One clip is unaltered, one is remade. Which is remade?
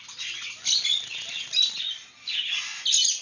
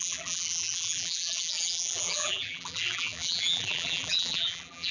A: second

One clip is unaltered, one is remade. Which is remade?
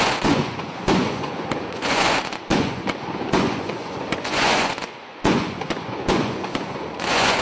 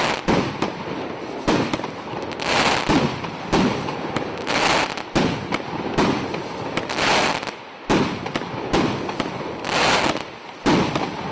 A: first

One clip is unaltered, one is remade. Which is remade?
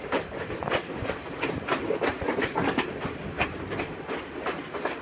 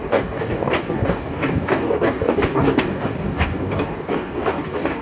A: second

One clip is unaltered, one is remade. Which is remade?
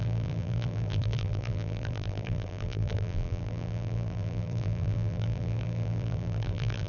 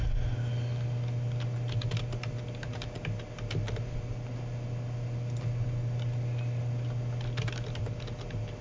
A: first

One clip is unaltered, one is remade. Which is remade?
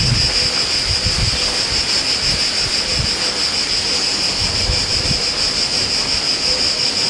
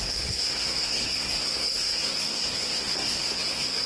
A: second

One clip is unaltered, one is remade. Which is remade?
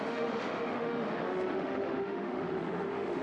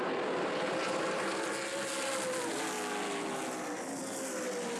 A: first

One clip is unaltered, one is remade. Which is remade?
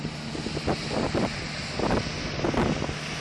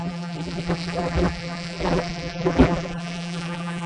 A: second